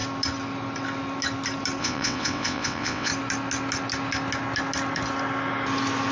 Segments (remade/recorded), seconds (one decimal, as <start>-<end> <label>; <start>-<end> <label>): 0.0-1.8 recorded; 1.8-3.1 remade; 3.1-6.1 recorded